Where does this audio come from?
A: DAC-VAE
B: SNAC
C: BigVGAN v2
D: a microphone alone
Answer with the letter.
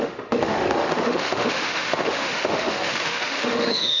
A